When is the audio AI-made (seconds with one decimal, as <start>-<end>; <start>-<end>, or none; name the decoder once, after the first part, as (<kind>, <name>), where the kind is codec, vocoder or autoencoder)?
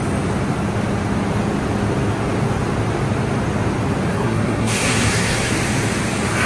4.1-5.5 (codec, SNAC)